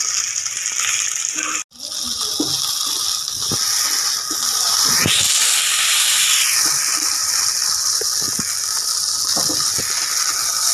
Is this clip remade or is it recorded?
recorded